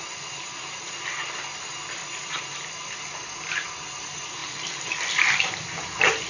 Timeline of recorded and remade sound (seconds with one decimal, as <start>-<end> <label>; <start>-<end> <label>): 0.0-6.3 recorded